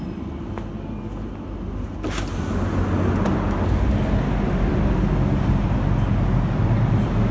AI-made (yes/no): no